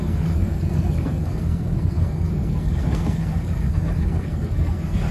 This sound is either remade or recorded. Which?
remade